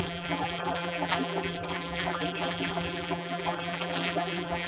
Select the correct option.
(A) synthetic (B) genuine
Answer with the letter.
A